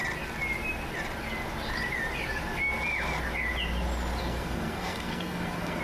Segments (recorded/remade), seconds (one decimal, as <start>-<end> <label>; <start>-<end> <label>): 0.0-4.2 recorded; 4.2-5.8 remade